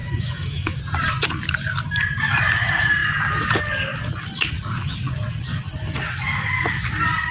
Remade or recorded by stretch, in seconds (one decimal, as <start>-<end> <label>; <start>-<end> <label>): 0.0-0.8 remade; 0.8-7.3 recorded